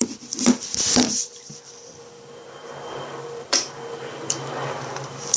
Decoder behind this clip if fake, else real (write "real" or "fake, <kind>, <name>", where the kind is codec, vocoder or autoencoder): fake, vocoder, BigVGAN v2